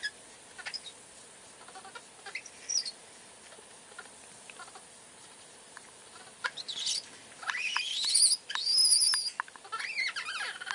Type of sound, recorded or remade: recorded